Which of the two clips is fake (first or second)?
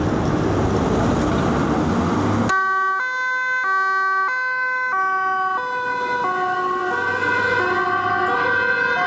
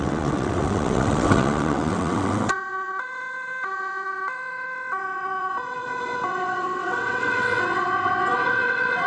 second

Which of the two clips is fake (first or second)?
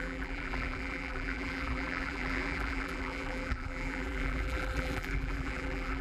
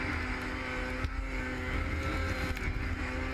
first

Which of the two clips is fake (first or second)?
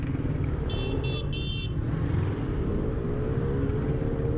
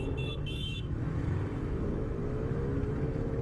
second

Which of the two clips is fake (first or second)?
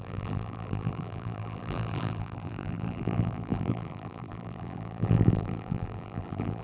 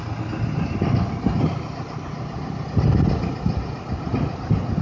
first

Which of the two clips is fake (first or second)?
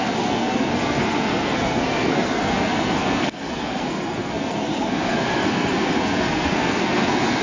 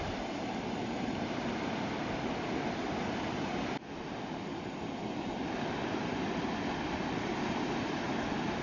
first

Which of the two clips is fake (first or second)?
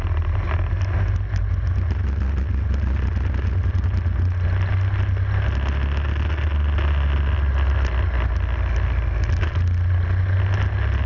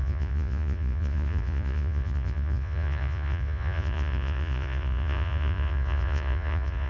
second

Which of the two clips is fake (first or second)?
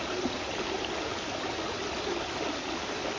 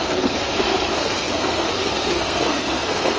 second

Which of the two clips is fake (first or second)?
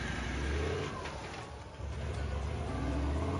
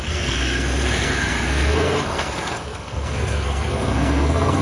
second